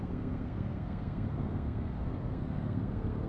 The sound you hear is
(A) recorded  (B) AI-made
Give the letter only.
B